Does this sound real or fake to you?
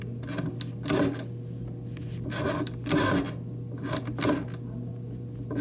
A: real